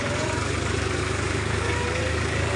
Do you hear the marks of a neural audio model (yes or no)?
yes